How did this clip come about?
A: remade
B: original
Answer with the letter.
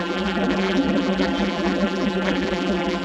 A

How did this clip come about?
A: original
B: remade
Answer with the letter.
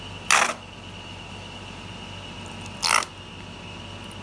A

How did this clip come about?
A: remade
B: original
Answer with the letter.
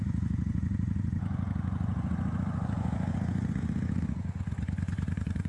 A